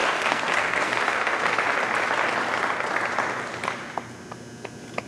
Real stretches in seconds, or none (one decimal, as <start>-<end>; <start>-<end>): 1.6-5.1